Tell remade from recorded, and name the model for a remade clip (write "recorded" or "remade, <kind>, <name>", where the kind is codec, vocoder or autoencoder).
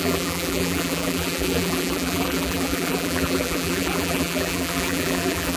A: remade, vocoder, BigVGAN v2